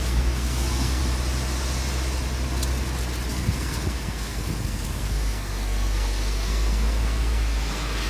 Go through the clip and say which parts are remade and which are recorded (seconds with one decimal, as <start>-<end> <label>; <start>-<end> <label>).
0.0-1.0 remade; 1.0-3.3 recorded; 3.3-8.1 remade